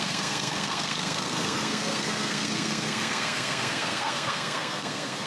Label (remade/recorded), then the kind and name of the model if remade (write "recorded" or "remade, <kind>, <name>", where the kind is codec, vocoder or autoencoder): remade, codec, SNAC